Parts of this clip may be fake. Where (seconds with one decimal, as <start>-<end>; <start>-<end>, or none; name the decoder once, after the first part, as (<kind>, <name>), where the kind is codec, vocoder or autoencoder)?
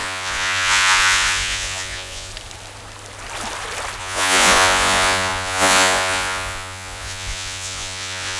0.0-2.3 (vocoder, Vocos); 4.0-8.4